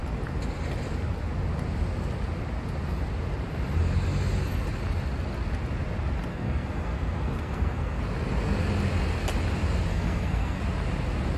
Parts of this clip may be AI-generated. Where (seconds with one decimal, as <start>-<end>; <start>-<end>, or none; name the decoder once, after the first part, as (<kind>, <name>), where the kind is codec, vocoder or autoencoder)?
6.3-8.0 (codec, SNAC); 9.9-10.6